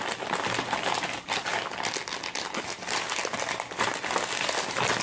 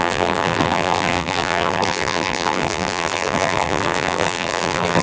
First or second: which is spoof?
second